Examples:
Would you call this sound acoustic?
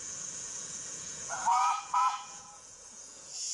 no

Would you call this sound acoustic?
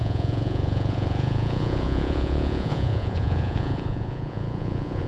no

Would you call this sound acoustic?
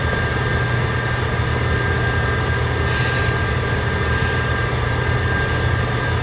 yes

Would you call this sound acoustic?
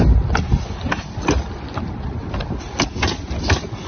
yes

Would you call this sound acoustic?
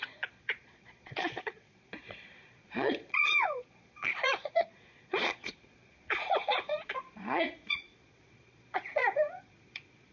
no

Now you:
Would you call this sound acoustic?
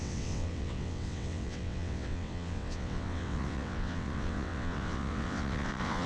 no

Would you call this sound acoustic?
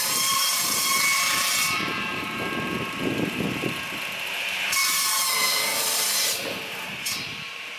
no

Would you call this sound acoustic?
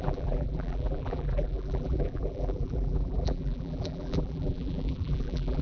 no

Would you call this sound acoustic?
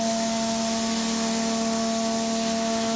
yes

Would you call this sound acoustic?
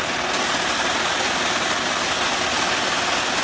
yes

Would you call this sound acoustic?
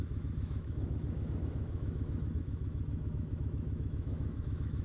no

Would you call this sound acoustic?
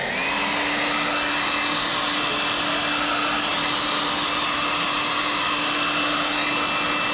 yes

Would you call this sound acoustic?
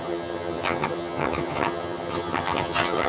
no